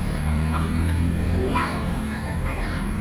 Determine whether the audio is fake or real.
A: fake